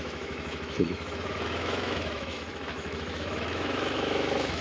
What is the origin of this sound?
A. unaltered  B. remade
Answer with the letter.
B